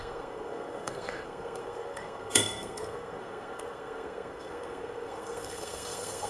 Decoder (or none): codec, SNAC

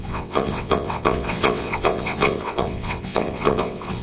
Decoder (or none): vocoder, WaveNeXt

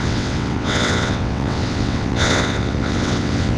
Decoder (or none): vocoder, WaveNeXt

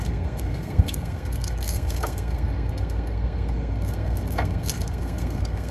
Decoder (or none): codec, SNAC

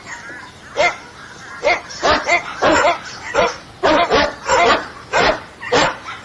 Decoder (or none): none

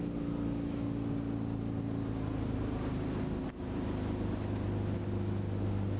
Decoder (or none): none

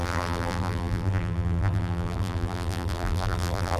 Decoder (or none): vocoder, BigVGAN v2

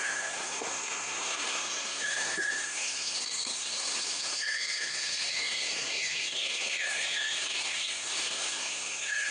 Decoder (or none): codec, SNAC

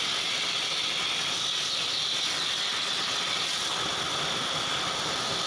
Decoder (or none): none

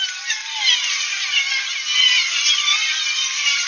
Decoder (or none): none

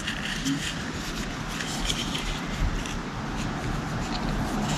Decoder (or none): none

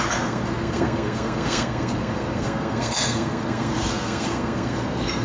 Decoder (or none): codec, SNAC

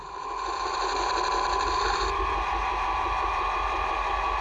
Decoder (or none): none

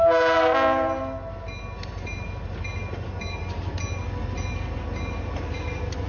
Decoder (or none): none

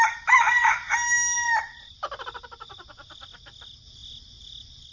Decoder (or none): none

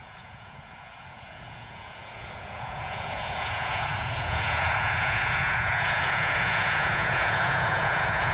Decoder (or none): vocoder, Vocos